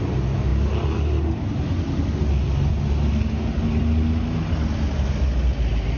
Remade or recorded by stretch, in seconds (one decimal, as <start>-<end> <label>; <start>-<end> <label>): 0.0-6.0 recorded